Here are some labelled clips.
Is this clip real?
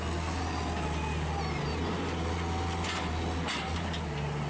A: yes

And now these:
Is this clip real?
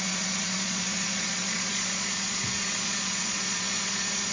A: no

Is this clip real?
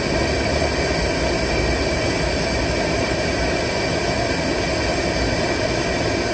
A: yes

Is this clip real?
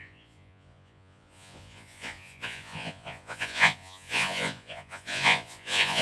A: no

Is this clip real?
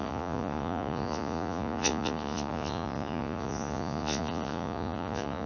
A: no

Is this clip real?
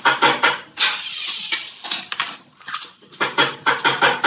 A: yes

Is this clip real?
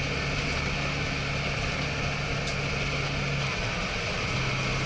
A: yes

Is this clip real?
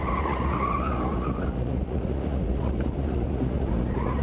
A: no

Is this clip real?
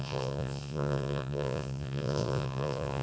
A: no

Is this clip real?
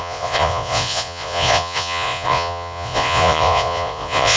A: no